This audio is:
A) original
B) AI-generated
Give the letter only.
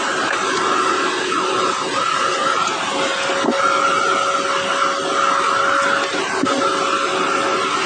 A